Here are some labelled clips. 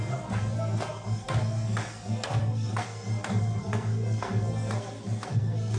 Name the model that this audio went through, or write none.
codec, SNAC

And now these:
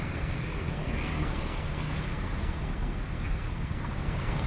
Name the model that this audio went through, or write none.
codec, SNAC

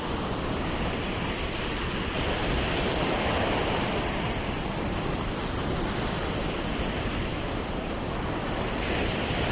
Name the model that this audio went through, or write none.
none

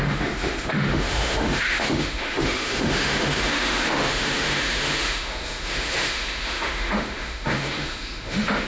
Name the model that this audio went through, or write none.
autoencoder, DAC-VAE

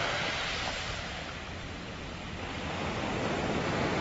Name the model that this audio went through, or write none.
none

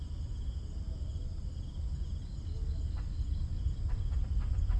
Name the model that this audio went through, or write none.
none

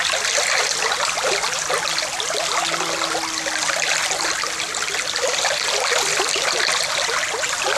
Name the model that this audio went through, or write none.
none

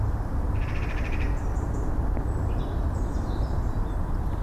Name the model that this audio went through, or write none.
none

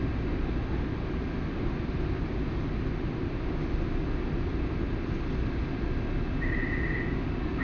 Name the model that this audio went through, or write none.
none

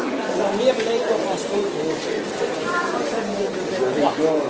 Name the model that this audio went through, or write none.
none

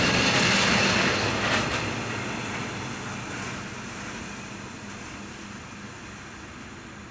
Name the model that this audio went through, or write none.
none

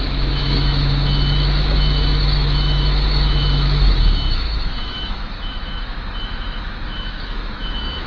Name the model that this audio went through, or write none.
autoencoder, DAC-VAE